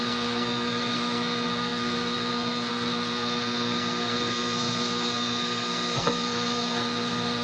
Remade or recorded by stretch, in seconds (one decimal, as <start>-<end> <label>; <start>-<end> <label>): 0.0-7.4 remade